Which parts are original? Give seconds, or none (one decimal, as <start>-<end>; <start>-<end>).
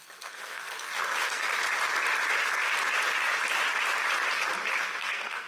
1.5-4.8